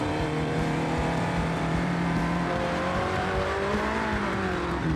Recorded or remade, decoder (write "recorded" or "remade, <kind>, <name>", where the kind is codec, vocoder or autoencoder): remade, vocoder, BigVGAN v2